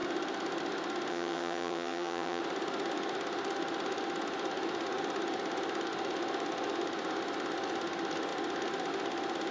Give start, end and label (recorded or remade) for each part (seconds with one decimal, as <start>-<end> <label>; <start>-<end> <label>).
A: 0.0-1.1 recorded; 1.1-2.4 remade; 2.4-9.5 recorded